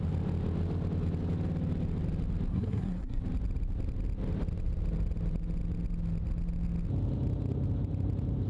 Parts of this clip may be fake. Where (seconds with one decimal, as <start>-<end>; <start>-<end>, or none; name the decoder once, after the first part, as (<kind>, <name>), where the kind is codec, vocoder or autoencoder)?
2.5-3.2 (codec, SNAC)